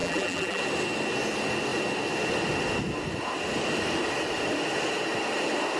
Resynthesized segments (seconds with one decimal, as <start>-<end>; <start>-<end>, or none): 0.0-0.6